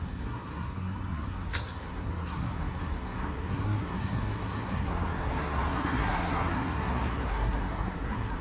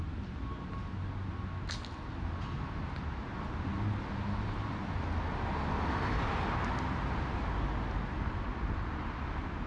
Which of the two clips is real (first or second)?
second